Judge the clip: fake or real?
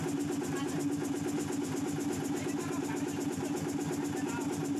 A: real